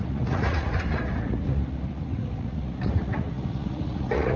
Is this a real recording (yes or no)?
no